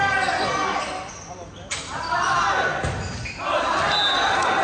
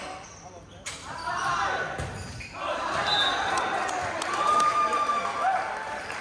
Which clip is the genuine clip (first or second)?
first